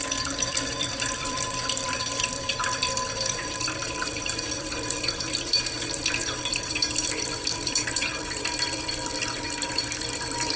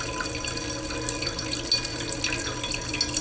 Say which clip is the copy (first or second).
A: first